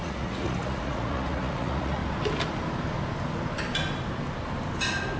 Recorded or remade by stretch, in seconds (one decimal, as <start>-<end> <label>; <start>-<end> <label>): 0.0-2.0 remade; 2.0-5.2 recorded